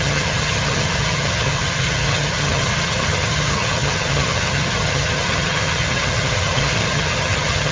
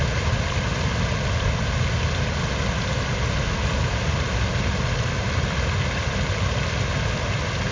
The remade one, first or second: first